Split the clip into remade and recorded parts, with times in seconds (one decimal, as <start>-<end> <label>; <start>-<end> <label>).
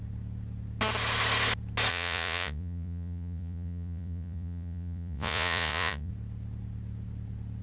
0.0-1.9 recorded; 1.9-6.1 remade; 6.1-7.6 recorded